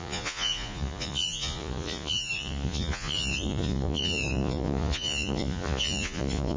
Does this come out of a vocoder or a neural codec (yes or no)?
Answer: yes